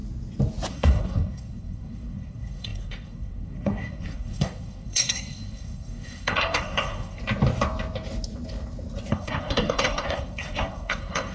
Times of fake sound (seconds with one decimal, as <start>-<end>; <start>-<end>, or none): 0.7-7.2; 9.1-11.3